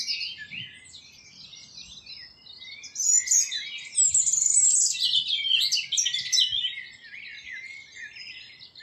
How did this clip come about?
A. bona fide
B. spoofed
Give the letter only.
A